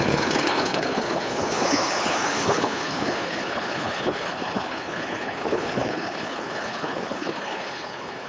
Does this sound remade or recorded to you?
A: remade